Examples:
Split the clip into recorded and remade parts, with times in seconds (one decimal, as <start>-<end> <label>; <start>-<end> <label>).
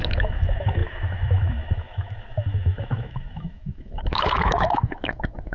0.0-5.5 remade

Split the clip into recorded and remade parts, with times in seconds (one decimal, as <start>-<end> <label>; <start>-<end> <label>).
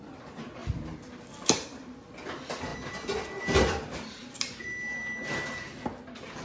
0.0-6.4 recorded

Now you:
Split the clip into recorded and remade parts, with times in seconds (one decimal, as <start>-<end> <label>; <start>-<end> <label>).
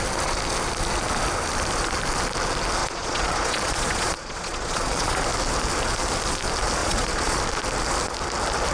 0.0-2.8 recorded; 2.8-5.2 remade; 5.2-6.8 recorded; 6.8-7.4 remade; 7.4-8.7 recorded